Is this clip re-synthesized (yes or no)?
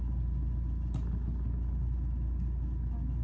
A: no